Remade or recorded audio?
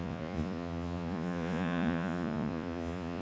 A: remade